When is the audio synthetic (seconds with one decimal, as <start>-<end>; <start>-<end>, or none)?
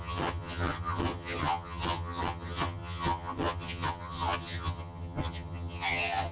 0.0-6.3